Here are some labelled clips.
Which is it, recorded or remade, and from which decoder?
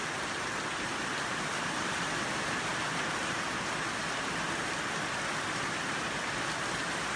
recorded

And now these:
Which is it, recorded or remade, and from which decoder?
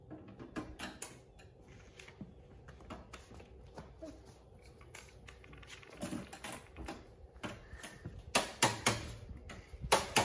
recorded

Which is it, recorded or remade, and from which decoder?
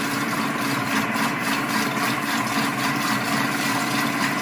remade, vocoder, BigVGAN v2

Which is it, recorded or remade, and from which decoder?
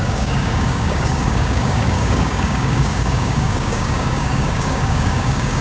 remade, codec, DAC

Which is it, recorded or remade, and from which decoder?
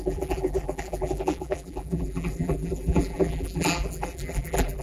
remade, vocoder, BigVGAN v2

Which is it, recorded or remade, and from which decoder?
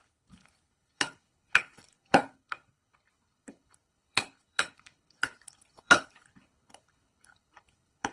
remade, codec, HILCodec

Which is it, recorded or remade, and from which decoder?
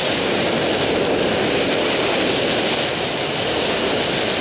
recorded